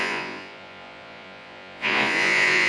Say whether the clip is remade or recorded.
remade